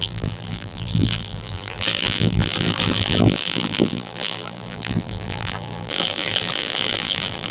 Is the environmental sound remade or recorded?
remade